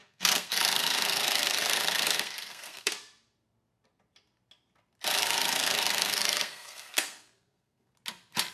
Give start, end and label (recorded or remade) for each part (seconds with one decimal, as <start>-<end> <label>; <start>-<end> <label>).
0.0-2.9 remade; 2.9-5.2 recorded; 5.2-7.9 remade; 7.9-8.5 recorded